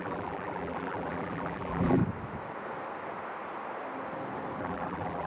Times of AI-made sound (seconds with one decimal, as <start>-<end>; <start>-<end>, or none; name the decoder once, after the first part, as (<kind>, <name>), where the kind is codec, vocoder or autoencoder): 0.0-2.0 (vocoder, BigVGAN v2); 4.6-5.3